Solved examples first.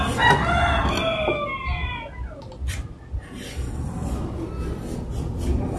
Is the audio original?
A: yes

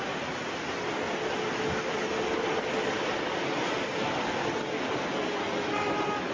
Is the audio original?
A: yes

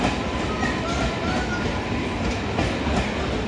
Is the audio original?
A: yes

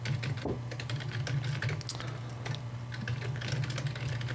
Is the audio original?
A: yes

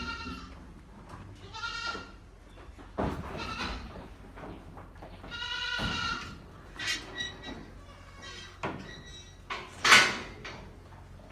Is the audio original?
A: yes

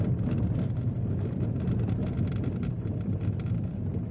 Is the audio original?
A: yes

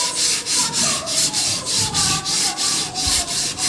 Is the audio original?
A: no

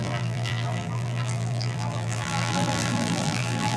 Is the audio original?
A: no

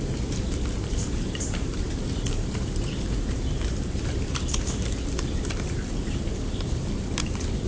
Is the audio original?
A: no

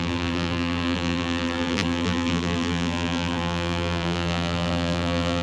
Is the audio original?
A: no